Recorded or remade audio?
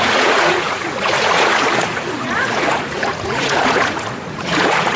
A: remade